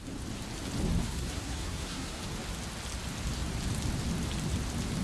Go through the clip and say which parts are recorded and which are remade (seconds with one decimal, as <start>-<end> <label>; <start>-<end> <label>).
0.0-1.0 recorded; 1.0-2.2 remade; 2.2-5.0 recorded